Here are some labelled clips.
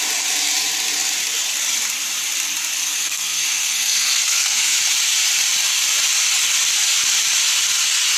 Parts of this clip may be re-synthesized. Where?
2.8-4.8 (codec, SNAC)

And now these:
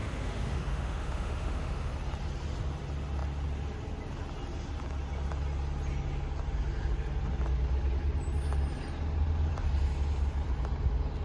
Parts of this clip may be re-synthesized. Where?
0.0-1.9 (autoencoder, DAC-VAE)

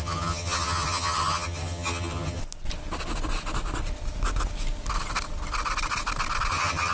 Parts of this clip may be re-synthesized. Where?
0.0-2.4 (vocoder, HiFi-GAN); 6.5-6.9

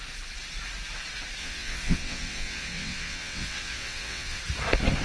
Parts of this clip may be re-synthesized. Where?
1.4-4.4 (vocoder, WaveNeXt)

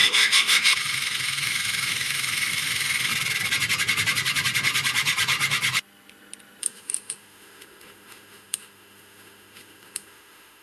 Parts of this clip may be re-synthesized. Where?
0.0-3.1 (autoencoder, DAC-VAE); 6.6-10.6

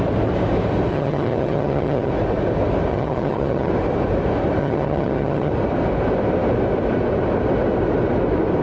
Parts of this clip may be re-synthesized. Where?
0.9-2.1 (vocoder, HiFi-GAN); 2.9-3.7; 4.6-5.5

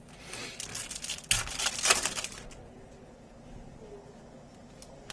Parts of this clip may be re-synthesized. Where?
none

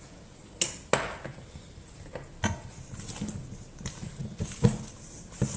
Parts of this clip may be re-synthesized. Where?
none